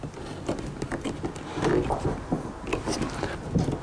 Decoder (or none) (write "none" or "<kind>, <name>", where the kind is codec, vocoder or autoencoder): none